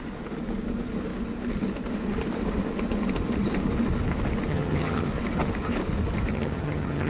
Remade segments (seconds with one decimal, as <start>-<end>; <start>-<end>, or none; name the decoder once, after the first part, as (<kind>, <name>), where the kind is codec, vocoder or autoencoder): 4.5-5.1 (vocoder, HiFi-GAN); 6.3-7.1